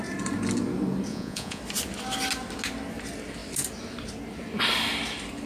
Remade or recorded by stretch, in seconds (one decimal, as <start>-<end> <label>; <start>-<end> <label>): 0.0-1.1 recorded; 1.1-1.6 remade; 1.6-5.5 recorded